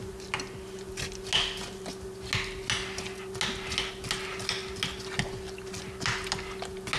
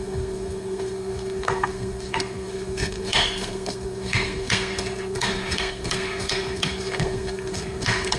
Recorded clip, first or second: first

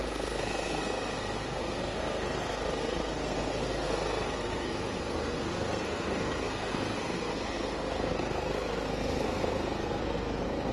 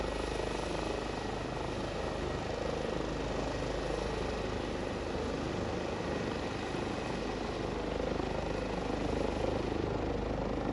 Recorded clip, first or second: second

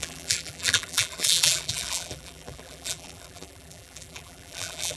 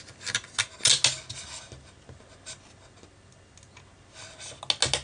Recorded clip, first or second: second